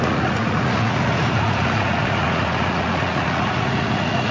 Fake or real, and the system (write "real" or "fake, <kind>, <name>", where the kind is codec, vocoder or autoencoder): fake, vocoder, Vocos